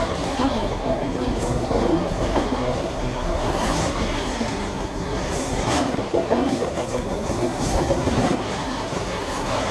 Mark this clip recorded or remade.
remade